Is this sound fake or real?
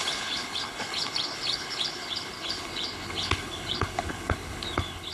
fake